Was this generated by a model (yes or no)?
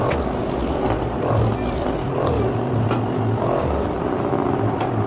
no